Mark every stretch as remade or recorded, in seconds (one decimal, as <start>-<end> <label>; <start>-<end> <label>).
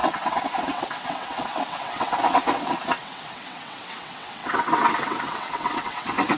0.0-6.4 remade